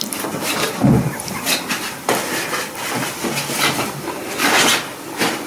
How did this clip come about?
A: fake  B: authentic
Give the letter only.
B